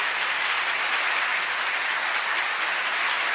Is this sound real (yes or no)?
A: yes